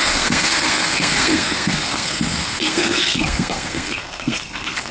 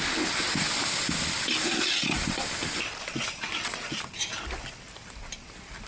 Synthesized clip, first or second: first